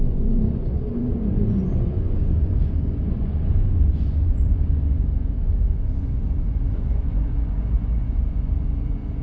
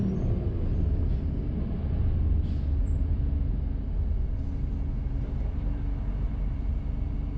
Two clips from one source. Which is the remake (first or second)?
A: first